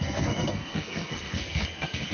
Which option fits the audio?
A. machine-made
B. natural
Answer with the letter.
A